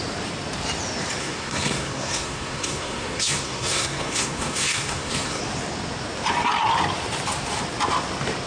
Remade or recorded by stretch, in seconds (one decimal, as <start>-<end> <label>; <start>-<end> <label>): 0.0-1.2 recorded; 1.2-5.4 remade; 5.4-8.5 recorded